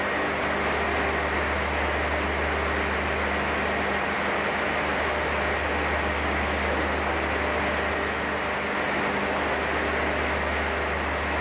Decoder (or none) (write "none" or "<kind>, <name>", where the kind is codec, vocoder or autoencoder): none